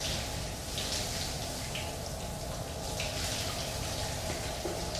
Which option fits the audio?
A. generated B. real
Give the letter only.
B